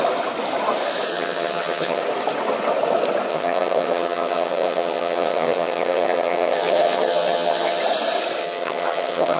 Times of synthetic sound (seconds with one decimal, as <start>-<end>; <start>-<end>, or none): 1.1-2.0; 3.3-7.8; 8.4-9.4